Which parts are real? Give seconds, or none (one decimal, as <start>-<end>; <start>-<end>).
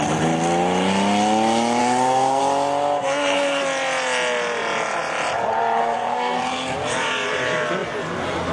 0.0-1.8; 2.4-3.0; 3.6-5.8; 6.4-8.5